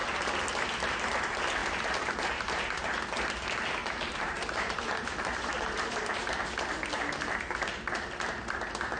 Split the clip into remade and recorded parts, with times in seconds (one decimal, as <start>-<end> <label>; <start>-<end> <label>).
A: 0.0-1.6 recorded; 1.6-2.8 remade; 2.8-3.8 recorded; 3.8-6.4 remade; 6.4-9.0 recorded